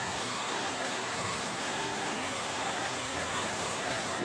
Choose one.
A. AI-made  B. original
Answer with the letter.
A